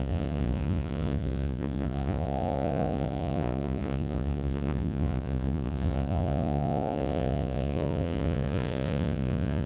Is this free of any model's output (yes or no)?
no